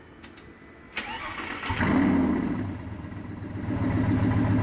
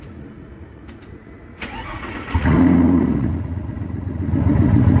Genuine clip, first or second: first